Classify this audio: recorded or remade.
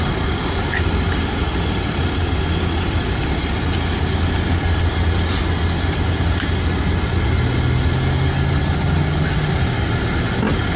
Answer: recorded